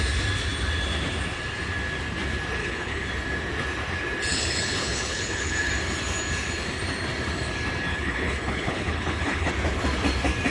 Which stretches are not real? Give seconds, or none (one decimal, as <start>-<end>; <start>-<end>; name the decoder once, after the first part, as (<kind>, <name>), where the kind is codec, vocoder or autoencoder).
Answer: 2.6-3.1 (codec, HILCodec); 4.3-5.7; 7.9-9.5